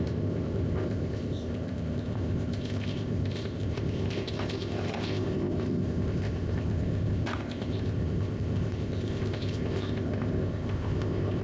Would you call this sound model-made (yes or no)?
yes